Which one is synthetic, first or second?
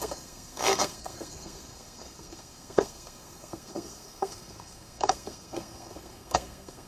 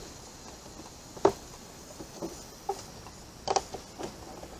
first